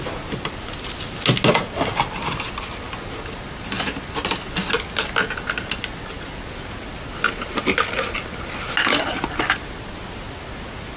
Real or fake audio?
real